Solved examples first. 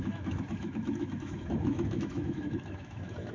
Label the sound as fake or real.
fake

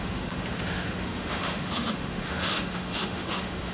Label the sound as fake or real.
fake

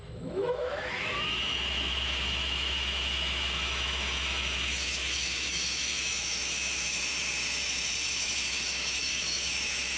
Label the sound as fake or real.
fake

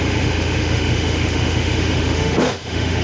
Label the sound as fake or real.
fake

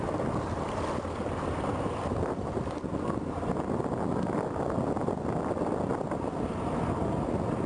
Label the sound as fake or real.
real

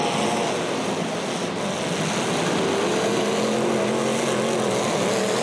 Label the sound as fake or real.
real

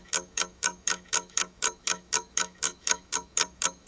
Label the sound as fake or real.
fake